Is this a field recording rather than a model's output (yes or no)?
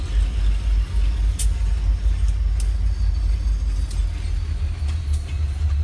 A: yes